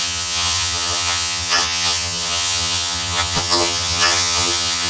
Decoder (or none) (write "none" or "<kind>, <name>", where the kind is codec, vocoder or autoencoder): vocoder, HiFi-GAN